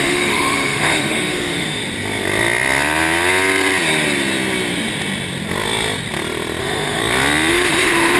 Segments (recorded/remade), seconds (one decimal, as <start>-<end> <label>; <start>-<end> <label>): 0.0-1.8 remade; 1.8-6.6 recorded; 6.6-7.0 remade; 7.0-7.5 recorded; 7.5-8.2 remade